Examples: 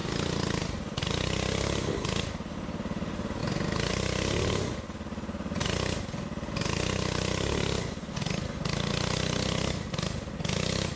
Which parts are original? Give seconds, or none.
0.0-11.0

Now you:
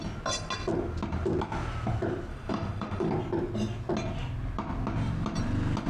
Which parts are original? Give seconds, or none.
0.0-2.3; 3.1-5.9

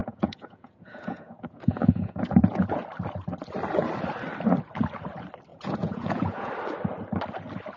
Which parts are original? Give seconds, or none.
2.8-5.5; 6.5-7.8